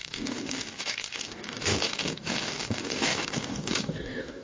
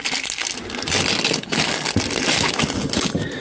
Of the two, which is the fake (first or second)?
first